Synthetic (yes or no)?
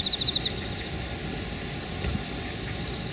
no